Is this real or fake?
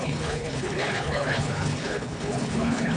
fake